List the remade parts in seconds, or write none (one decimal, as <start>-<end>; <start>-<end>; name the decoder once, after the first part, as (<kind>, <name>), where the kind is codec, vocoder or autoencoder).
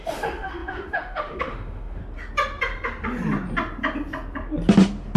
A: 0.0-2.0 (autoencoder, DAC-VAE)